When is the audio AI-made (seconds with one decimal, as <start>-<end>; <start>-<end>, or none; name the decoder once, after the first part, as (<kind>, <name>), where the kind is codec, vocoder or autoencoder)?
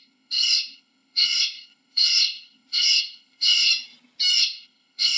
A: 0.0-3.7 (codec, ZipCodec); 4.4-5.2